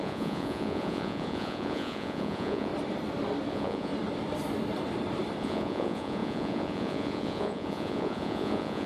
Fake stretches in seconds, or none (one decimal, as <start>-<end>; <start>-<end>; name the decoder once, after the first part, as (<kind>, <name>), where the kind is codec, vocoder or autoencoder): 0.0-2.7 (vocoder, Vocos); 3.5-3.9; 5.4-8.9